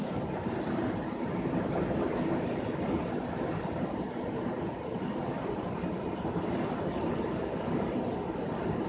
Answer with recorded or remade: recorded